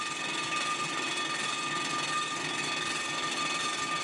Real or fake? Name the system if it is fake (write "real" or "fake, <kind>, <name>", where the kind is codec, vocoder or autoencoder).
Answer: real